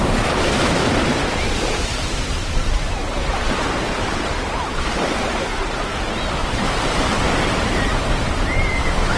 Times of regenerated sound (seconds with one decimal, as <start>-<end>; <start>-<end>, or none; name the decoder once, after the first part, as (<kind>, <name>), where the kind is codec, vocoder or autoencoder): 0.0-5.9 (vocoder, BigVGAN v2); 6.6-9.2